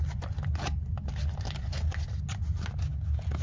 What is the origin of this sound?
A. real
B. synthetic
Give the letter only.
A